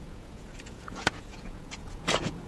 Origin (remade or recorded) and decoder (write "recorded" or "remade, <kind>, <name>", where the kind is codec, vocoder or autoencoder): remade, vocoder, Vocos